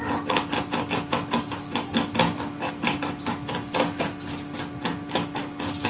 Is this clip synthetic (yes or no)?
no